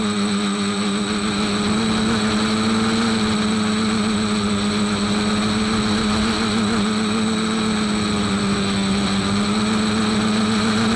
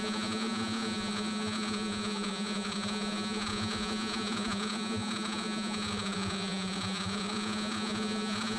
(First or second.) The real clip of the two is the first